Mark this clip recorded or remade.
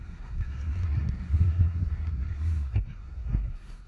remade